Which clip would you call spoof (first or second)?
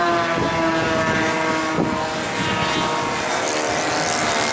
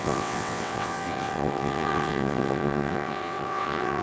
second